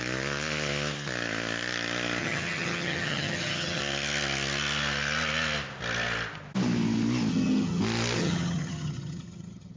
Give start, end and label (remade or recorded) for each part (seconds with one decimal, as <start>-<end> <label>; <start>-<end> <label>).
0.0-2.2 recorded; 2.2-3.8 remade; 3.8-7.3 recorded; 7.3-7.8 remade; 7.8-8.2 recorded; 8.2-9.8 remade